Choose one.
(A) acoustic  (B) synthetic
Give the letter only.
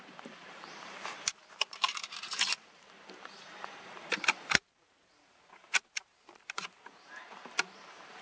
B